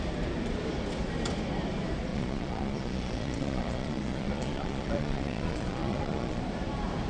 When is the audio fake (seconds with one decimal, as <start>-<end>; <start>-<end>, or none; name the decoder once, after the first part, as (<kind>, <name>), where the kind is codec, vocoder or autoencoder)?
2.1-6.4 (vocoder, Vocos)